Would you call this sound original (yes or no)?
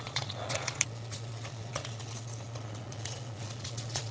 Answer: no